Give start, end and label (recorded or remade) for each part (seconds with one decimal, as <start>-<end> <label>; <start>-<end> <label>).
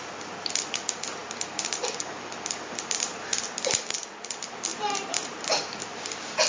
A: 0.0-4.7 recorded; 4.7-5.6 remade; 5.6-6.5 recorded